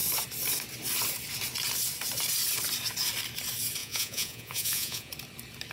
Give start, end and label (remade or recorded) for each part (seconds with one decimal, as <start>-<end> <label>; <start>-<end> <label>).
0.0-3.8 recorded; 3.8-5.1 remade; 5.1-5.7 recorded